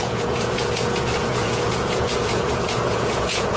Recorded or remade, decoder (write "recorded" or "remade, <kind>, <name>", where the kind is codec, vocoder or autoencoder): remade, vocoder, Vocos